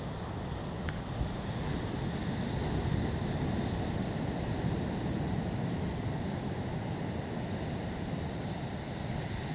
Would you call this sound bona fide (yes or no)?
yes